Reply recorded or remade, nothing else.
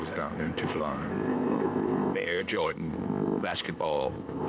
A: remade